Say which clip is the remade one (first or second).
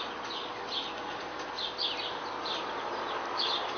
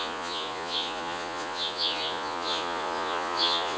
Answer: second